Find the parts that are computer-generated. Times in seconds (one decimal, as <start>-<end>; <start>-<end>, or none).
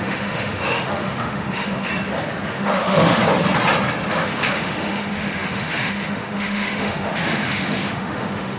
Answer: 0.0-1.9; 2.5-3.2; 4.1-8.6